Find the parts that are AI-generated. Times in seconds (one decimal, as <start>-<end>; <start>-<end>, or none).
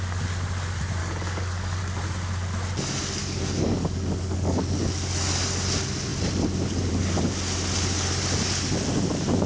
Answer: 1.0-1.8; 3.2-4.6